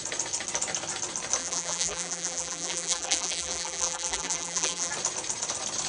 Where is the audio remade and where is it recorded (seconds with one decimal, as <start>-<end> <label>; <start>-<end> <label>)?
0.0-1.4 recorded; 1.4-4.9 remade; 4.9-5.9 recorded